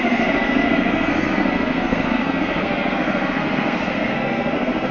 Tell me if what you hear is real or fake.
fake